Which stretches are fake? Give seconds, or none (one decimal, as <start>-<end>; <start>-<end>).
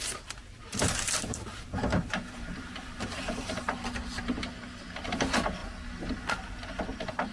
0.7-3.7